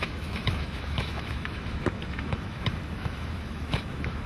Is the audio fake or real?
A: fake